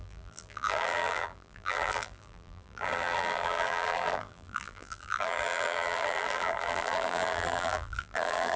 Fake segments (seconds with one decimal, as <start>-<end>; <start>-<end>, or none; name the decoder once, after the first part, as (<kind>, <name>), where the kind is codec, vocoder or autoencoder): 0.0-8.6 (vocoder, BigVGAN v2)